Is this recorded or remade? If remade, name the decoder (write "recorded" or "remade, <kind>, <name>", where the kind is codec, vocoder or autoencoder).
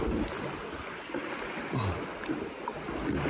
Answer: recorded